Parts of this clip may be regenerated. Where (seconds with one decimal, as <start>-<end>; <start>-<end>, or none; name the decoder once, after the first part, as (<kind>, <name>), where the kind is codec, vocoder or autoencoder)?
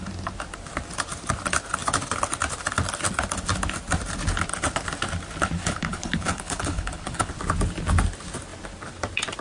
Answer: 5.6-7.3 (codec, HILCodec)